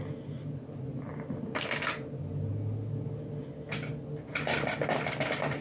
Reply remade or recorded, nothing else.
recorded